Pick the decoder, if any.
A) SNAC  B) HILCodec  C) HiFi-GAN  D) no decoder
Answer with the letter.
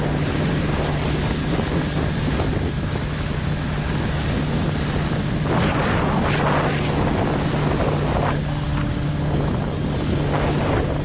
D